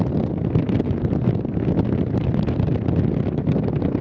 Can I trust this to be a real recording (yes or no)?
yes